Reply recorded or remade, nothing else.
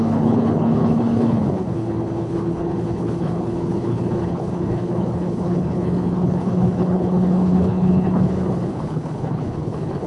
remade